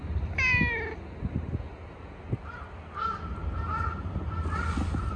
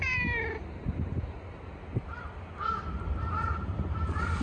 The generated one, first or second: second